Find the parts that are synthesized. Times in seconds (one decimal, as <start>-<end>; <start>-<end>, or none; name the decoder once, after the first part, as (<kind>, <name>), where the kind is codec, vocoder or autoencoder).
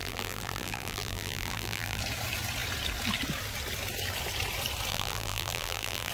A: 0.0-2.0 (vocoder, BigVGAN v2); 4.9-6.1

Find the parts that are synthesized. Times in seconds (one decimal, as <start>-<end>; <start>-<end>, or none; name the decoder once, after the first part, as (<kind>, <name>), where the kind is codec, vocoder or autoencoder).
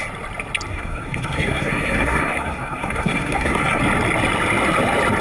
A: 0.7-3.8 (codec, SNAC)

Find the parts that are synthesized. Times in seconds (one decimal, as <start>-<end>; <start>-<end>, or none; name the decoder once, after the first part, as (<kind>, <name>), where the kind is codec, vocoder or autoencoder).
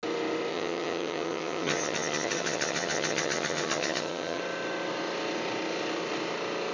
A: 0.5-4.4 (vocoder, HiFi-GAN)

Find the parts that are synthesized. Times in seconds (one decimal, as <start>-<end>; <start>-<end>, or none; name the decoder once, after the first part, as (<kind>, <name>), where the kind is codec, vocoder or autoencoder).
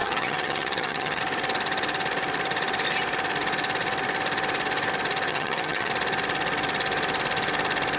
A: 0.0-1.2 (vocoder, HiFi-GAN); 5.3-5.9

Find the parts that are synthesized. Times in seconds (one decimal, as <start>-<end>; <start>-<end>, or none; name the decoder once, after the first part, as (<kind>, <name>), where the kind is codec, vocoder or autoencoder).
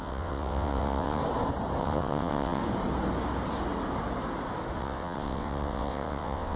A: 0.0-1.2 (vocoder, WaveNeXt); 1.8-2.6; 4.8-6.6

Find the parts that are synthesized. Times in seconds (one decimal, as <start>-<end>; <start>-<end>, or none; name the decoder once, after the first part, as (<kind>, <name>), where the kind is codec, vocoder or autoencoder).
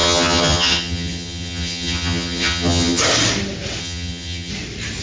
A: 0.0-3.0 (vocoder, HiFi-GAN); 3.8-4.5